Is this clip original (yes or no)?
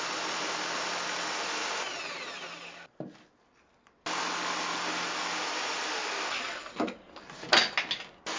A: yes